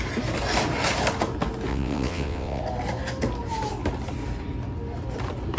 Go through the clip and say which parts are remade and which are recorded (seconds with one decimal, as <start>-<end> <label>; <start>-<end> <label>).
0.0-1.7 recorded; 1.7-2.6 remade; 2.6-5.6 recorded